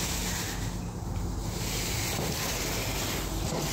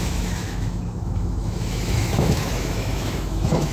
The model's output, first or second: second